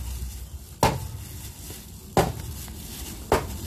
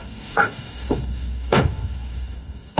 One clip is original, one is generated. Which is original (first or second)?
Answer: first